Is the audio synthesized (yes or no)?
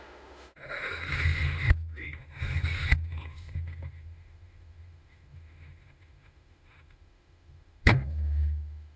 yes